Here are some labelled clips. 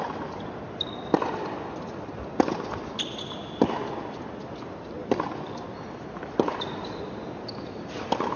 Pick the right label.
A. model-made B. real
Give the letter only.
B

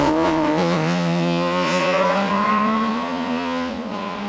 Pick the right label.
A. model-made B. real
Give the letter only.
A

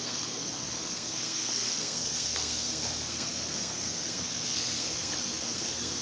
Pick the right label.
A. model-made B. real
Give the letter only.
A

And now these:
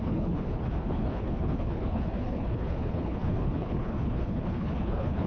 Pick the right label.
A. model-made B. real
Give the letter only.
A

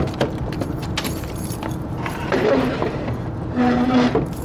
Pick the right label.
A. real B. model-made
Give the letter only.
B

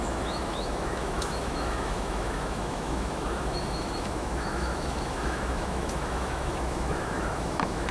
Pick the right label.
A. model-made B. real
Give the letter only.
A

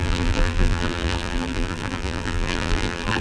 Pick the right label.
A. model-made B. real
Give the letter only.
A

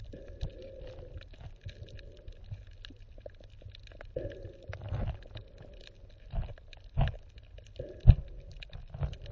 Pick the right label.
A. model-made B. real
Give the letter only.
B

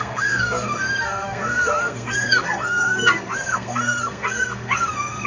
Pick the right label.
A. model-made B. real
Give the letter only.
A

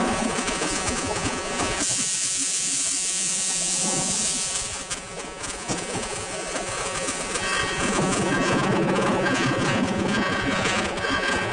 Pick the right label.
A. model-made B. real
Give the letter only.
A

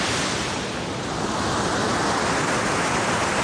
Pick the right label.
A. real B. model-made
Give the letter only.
A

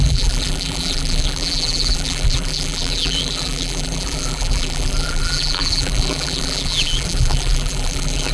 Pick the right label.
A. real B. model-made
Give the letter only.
B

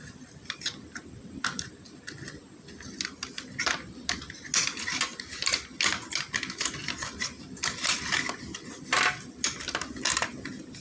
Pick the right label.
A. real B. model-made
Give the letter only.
A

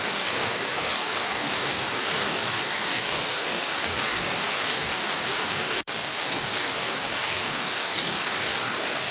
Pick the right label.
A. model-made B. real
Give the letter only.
A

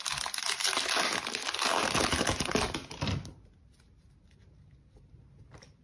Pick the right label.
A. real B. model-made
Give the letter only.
A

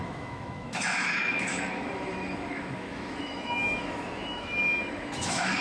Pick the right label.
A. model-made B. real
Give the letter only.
A